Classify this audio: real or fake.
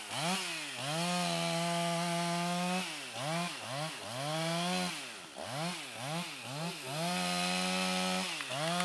real